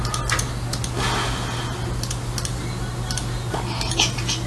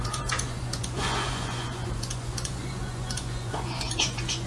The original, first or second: first